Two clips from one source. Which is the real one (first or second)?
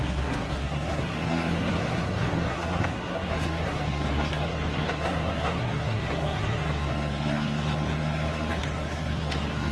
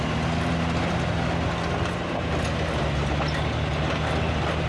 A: second